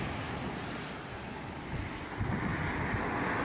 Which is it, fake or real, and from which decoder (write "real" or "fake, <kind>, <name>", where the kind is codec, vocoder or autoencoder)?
real